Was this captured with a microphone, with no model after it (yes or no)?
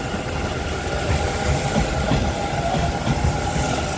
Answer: yes